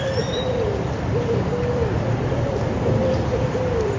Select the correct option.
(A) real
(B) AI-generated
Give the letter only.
B